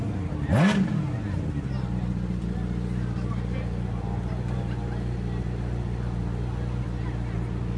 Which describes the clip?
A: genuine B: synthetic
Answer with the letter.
A